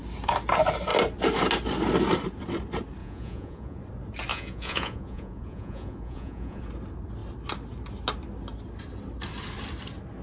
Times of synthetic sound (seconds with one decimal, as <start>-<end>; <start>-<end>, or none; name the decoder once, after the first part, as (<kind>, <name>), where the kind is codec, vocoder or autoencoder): 3.0-3.8 (vocoder, Vocos); 4.3-6.6